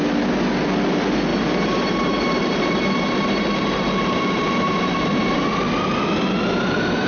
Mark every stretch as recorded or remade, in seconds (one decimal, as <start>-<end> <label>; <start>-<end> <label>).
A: 0.0-1.3 recorded; 1.3-5.4 remade; 5.4-7.1 recorded